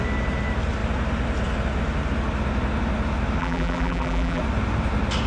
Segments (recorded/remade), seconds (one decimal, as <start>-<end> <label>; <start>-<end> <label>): 0.0-3.4 recorded; 3.4-4.4 remade; 4.4-5.3 recorded